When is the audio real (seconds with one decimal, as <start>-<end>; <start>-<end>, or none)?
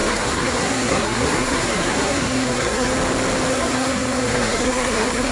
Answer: 2.9-3.5